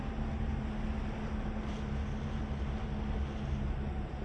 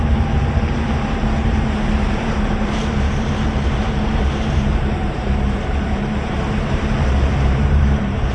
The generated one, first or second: second